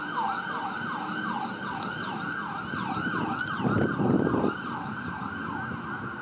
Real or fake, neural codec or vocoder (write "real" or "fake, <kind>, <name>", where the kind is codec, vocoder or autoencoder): real